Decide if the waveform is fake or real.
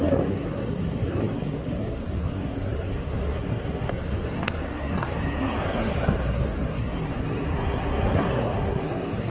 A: fake